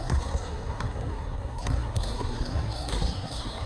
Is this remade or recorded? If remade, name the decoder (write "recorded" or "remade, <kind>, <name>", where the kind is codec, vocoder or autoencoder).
remade, codec, SNAC